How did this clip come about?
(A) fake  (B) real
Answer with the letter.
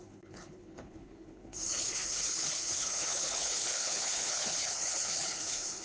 A